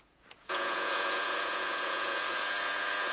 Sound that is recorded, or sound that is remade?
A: remade